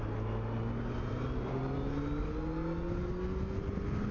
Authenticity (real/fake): real